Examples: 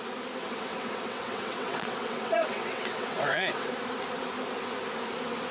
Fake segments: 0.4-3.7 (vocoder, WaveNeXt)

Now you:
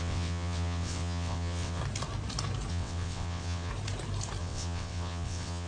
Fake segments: 0.0-1.8 (vocoder, WaveNeXt); 2.7-3.7; 4.4-5.7

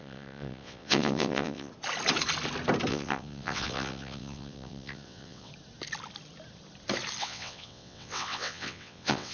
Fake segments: 0.0-1.7 (vocoder, WaveNeXt); 2.9-5.5; 7.2-9.3

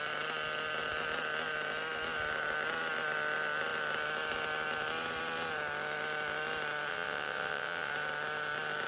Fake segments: 6.9-7.9 (vocoder, WaveNeXt)

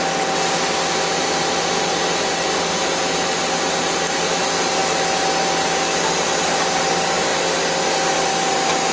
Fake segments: none